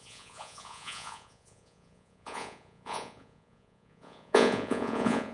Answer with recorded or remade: remade